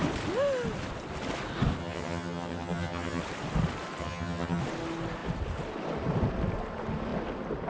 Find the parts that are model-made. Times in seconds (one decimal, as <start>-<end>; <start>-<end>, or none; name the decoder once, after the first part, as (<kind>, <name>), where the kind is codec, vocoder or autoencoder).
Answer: 1.8-3.2 (vocoder, HiFi-GAN); 4.0-4.6